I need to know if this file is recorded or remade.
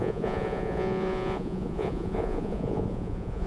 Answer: remade